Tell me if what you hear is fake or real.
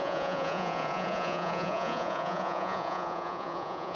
fake